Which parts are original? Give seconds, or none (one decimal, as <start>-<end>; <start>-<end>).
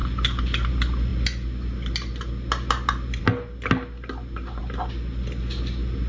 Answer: 0.0-6.1